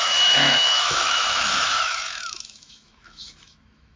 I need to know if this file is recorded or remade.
remade